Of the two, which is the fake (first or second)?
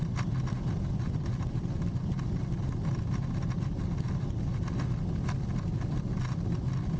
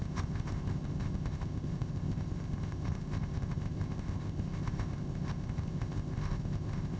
second